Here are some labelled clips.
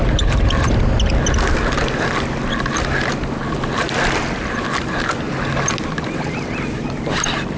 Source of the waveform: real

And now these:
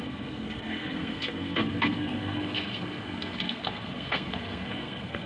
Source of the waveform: fake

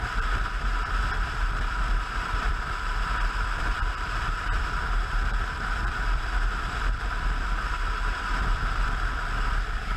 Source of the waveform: fake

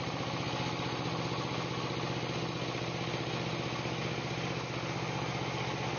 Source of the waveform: real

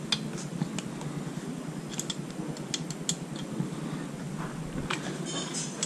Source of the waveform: real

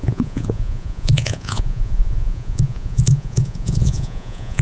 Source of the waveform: fake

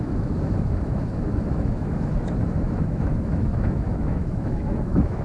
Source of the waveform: fake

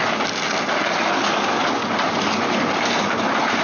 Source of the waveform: real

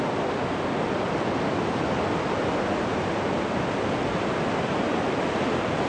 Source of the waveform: real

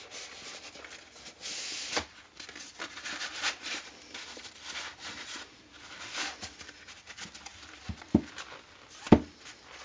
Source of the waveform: real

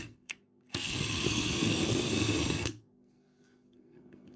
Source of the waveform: fake